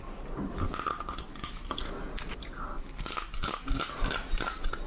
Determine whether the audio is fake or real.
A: real